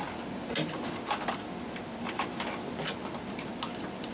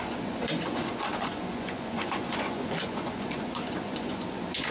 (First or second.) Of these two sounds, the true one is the first